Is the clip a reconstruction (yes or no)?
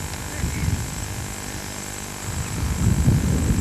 no